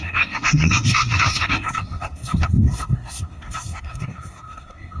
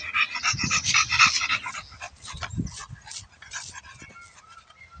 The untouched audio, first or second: second